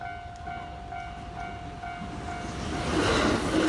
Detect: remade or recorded recorded